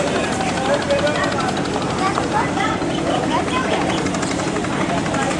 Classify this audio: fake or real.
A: fake